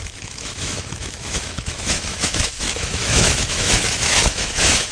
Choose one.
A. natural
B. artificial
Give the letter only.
B